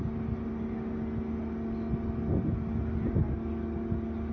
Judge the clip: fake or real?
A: real